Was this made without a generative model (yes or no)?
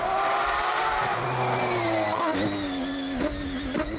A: yes